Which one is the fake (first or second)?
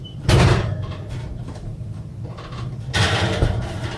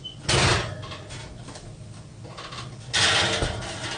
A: first